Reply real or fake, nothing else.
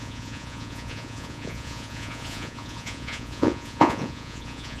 fake